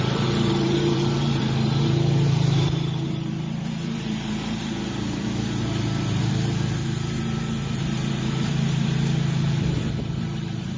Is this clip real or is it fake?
fake